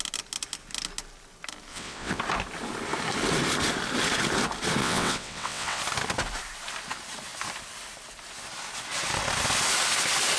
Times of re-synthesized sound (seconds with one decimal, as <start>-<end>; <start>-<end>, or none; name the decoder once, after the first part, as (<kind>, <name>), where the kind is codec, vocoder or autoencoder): 1.7-2.2 (vocoder, WaveNeXt); 4.8-5.8